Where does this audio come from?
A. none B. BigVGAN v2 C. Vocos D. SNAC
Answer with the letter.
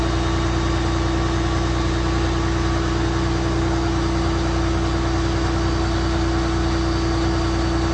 A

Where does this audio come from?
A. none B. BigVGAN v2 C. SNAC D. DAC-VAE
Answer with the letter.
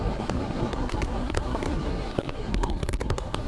C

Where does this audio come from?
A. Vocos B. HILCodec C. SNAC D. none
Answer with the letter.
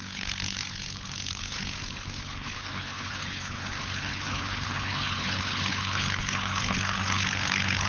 B